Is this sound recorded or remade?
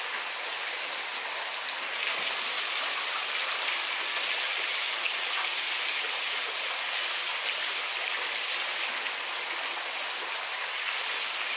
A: recorded